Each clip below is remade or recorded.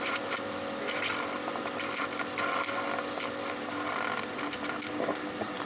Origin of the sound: recorded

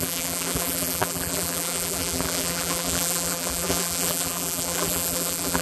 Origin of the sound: remade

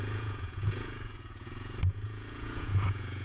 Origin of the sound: remade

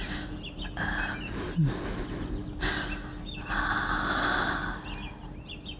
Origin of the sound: recorded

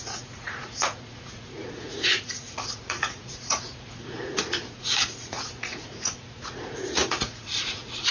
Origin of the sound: remade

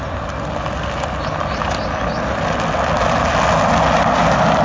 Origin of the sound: recorded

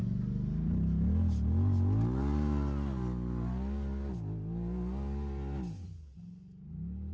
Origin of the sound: recorded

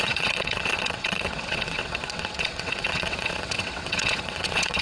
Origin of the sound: remade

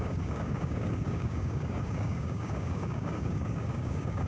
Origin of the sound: remade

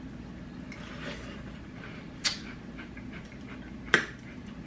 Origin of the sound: recorded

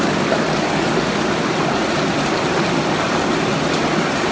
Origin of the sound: recorded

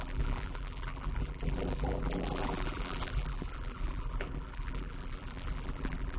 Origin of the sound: remade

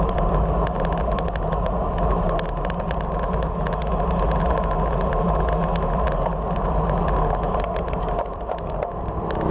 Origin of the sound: recorded